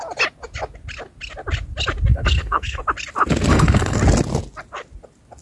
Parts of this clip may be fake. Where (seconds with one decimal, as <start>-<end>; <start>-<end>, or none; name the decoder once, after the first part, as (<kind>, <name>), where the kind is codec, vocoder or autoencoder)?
2.1-2.8 (codec, SNAC); 3.5-4.0